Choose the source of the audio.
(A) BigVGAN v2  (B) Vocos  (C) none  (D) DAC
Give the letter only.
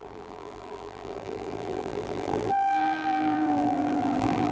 A